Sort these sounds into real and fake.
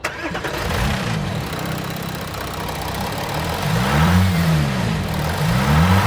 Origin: fake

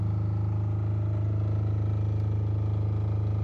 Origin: real